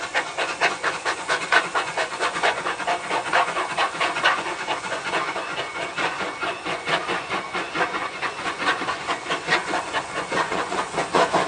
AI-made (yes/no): yes